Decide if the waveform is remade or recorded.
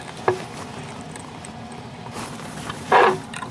remade